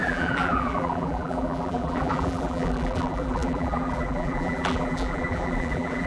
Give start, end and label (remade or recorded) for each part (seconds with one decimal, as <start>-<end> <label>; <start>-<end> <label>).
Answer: 0.0-6.1 remade